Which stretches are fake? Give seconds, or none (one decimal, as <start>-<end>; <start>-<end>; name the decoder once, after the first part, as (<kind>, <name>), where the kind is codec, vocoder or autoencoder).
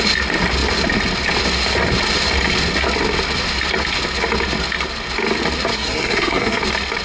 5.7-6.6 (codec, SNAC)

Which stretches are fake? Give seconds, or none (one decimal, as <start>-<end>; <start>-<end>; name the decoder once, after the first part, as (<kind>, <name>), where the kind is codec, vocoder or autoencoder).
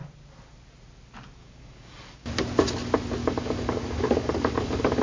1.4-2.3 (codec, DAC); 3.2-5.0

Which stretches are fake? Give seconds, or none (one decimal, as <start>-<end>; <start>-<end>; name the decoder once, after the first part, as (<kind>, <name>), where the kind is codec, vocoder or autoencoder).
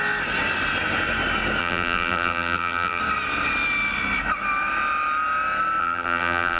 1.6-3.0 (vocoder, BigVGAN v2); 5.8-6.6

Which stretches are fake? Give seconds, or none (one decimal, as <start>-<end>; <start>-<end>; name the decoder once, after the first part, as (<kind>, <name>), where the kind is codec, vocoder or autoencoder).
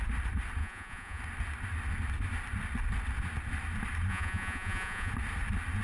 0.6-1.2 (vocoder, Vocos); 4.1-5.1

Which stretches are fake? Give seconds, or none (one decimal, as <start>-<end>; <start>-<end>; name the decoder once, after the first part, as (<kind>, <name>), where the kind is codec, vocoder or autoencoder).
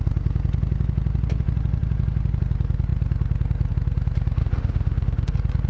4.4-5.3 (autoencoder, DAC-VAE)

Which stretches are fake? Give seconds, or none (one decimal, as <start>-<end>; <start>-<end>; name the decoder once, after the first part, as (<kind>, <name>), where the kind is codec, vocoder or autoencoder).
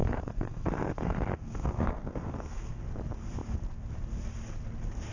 0.0-2.8 (codec, SNAC)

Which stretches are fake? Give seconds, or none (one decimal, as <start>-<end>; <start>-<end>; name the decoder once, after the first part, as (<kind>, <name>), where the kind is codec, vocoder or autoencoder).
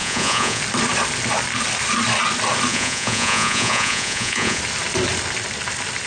0.0-0.6 (vocoder, Vocos); 2.7-4.6